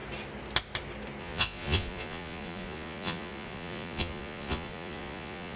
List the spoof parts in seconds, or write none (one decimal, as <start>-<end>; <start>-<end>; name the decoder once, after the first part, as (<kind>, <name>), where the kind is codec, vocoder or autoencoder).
1.2-5.6 (vocoder, Vocos)